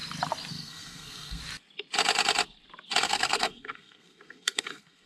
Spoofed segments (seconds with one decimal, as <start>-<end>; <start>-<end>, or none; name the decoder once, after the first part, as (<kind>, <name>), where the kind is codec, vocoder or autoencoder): 0.5-1.4 (codec, SNAC); 3.0-5.1